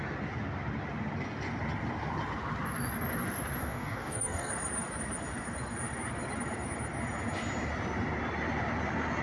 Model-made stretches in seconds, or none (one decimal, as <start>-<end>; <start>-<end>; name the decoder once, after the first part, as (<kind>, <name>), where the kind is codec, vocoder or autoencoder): 3.6-4.5 (codec, DAC)